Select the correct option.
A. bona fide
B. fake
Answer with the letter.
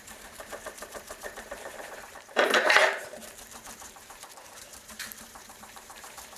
B